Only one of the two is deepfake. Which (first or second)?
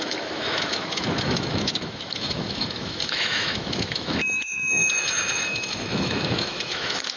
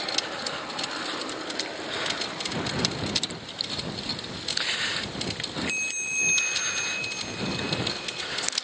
first